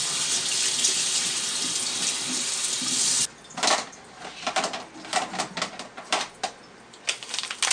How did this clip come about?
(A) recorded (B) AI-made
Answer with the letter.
A